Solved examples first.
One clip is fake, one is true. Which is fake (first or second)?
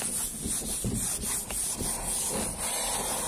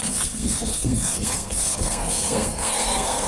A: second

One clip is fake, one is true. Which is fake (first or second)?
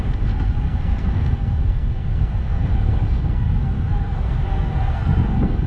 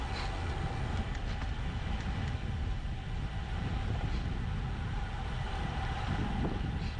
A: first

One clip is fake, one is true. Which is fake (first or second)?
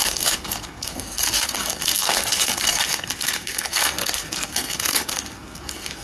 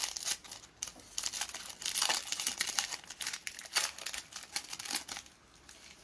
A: first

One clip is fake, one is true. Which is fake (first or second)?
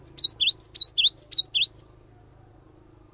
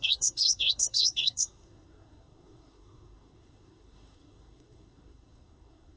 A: second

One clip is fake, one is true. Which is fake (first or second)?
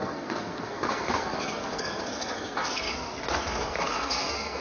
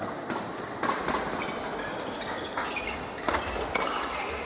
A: first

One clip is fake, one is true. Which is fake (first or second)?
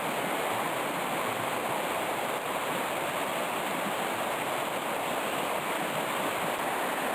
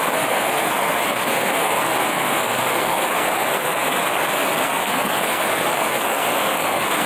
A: second